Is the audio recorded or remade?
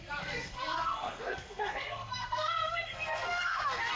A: remade